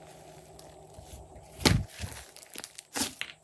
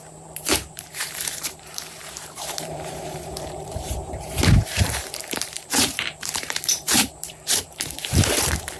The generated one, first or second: second